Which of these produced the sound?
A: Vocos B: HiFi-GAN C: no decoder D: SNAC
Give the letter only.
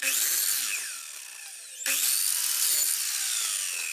C